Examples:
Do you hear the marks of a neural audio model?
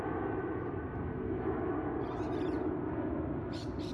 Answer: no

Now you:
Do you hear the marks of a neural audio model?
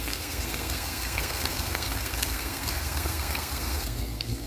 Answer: yes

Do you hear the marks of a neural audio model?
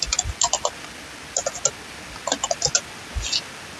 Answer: no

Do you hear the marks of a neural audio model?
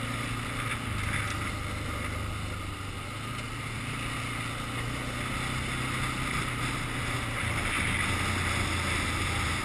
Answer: no